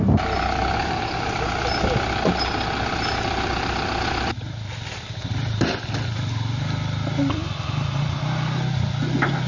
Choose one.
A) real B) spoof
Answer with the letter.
A